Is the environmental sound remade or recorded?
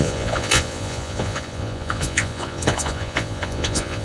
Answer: remade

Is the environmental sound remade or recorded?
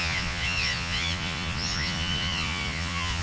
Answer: remade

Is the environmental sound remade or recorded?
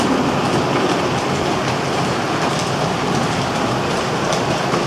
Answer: remade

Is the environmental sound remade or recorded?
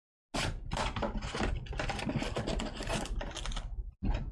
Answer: recorded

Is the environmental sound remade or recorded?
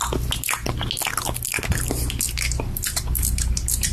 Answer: recorded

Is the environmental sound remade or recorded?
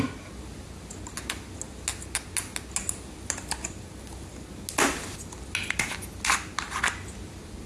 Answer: recorded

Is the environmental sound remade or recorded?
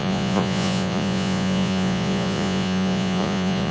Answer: remade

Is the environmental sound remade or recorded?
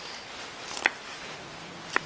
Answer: recorded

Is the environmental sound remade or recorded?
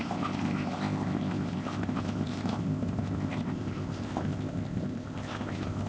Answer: remade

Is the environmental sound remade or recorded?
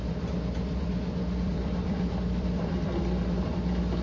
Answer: remade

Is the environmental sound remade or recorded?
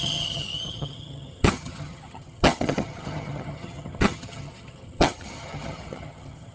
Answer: remade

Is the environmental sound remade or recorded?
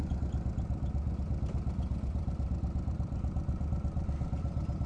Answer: recorded